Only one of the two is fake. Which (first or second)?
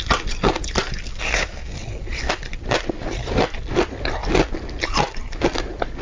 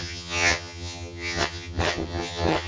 second